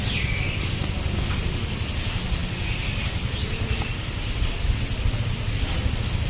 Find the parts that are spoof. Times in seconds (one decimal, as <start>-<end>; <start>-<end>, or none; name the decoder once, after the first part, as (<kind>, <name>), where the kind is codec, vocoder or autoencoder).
none